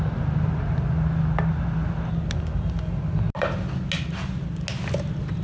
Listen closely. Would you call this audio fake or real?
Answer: real